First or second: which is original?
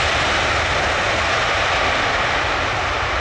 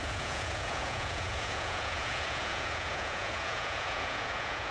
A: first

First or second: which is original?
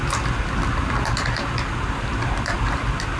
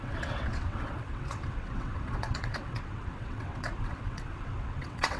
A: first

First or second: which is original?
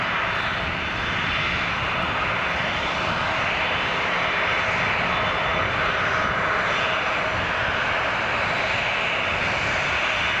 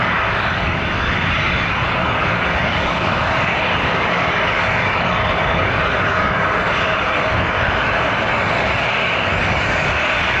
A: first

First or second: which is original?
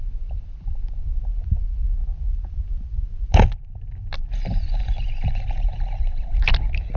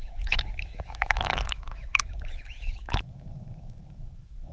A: first